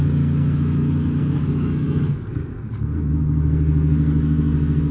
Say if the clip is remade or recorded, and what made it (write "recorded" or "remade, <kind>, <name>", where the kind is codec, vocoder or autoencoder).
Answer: remade, codec, SNAC